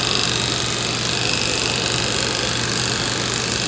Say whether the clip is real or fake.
real